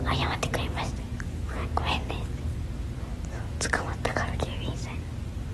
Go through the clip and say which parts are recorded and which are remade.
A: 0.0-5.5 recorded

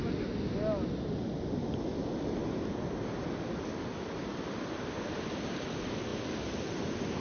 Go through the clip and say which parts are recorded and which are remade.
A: 0.0-7.2 recorded